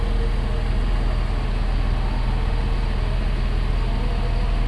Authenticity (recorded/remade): recorded